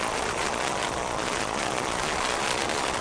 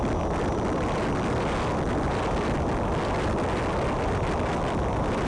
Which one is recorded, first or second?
second